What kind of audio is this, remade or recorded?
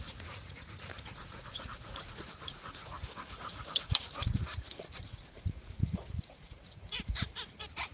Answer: remade